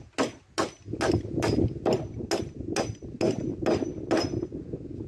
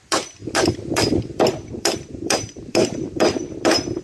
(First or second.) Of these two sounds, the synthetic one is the second